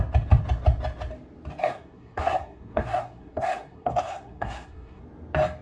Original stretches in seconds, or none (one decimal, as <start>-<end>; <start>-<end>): 0.0-1.6; 5.0-5.6